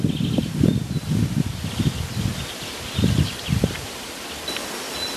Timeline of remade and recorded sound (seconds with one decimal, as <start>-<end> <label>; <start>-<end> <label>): 0.0-5.2 recorded